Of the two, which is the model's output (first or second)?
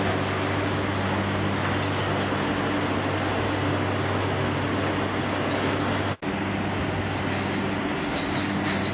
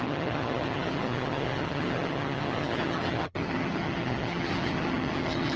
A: second